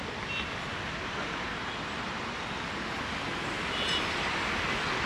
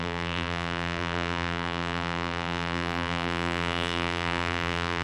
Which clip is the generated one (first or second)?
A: second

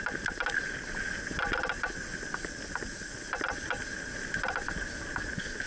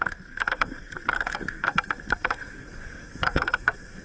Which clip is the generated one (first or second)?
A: second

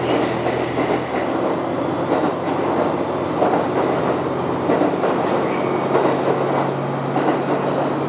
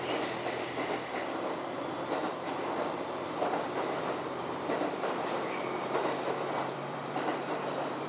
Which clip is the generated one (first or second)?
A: second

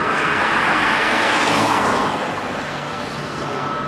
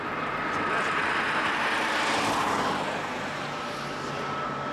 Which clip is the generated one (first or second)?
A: first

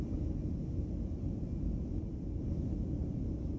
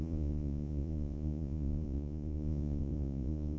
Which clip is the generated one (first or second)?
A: second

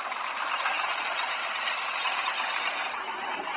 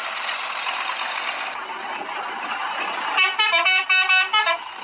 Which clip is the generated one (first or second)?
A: first